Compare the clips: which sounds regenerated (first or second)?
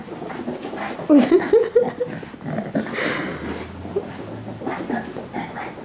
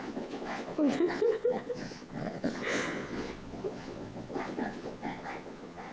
second